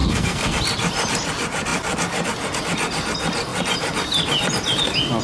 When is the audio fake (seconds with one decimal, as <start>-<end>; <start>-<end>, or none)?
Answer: 0.0-0.6